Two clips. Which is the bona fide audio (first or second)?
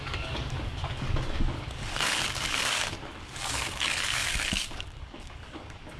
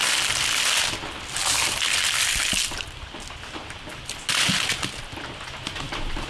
second